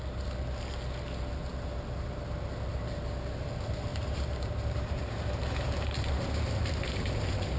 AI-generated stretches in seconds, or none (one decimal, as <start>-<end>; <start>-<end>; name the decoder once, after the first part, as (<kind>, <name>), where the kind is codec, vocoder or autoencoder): 3.9-7.6 (vocoder, BigVGAN v2)